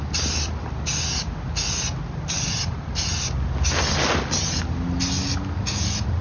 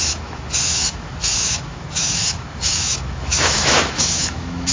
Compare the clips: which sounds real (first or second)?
first